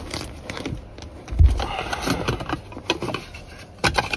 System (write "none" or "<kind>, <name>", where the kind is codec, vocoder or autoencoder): none